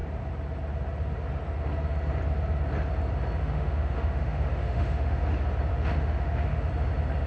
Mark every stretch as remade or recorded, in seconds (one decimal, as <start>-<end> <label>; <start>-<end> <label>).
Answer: 0.0-3.4 recorded; 3.4-5.2 remade; 5.2-5.7 recorded; 5.7-6.7 remade; 6.7-7.3 recorded